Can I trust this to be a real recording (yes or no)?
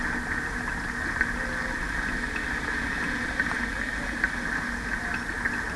yes